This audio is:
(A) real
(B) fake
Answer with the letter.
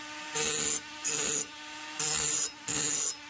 A